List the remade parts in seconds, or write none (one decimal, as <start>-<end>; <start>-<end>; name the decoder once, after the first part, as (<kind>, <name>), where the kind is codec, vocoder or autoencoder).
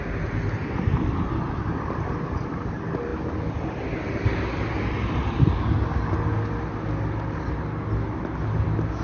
none